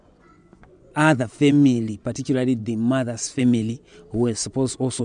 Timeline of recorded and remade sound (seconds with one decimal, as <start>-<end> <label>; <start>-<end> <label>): 0.0-2.6 remade; 2.6-3.4 recorded; 3.4-3.9 remade; 3.9-5.0 recorded